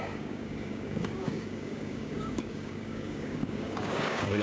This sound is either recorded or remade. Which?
remade